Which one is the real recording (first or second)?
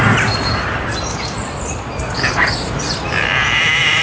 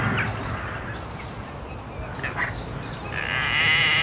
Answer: second